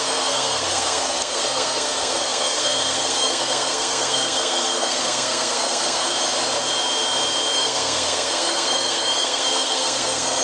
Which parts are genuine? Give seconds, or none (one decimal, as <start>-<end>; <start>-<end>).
6.1-7.5